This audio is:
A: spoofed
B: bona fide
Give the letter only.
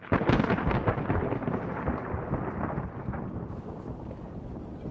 B